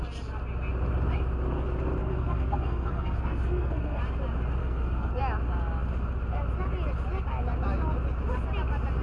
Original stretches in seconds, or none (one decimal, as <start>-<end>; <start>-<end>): 0.0-2.0; 4.0-4.6; 5.2-9.0